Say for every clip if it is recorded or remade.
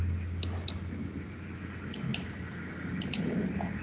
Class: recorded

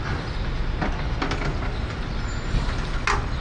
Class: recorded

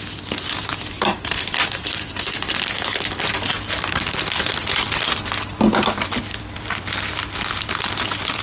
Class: remade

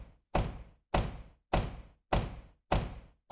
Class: recorded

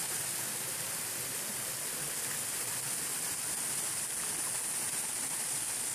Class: recorded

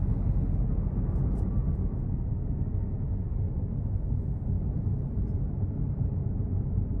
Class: recorded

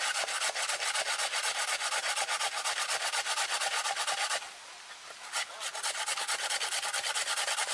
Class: recorded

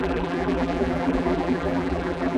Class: remade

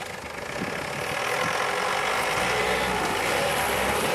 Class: recorded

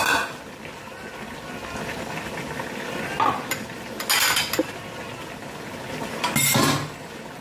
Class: recorded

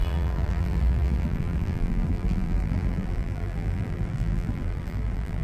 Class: remade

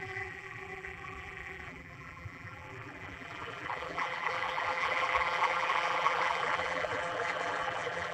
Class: remade